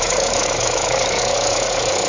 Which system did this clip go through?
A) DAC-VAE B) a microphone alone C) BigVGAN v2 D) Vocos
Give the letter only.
A